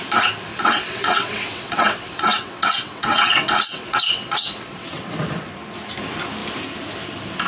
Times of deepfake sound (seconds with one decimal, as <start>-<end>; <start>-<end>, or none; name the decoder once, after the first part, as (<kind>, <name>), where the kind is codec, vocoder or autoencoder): 0.5-5.0 (vocoder, WaveNeXt)